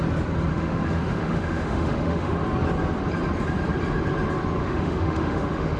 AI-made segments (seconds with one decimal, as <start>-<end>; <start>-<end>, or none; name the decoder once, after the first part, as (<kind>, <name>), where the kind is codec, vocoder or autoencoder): 0.5-2.4 (autoencoder, DAC-VAE); 4.6-5.8